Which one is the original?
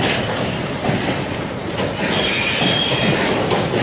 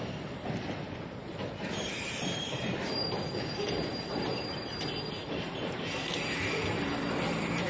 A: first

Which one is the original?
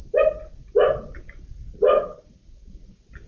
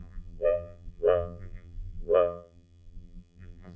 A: first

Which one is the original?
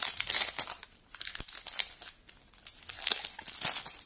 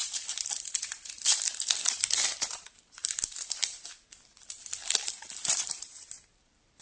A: first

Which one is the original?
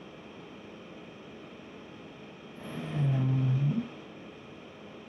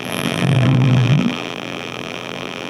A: first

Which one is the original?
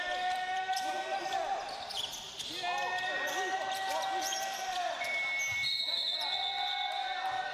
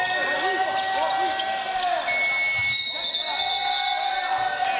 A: second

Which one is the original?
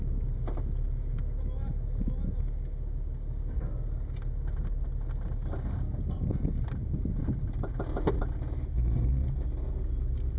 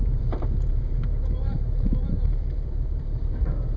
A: first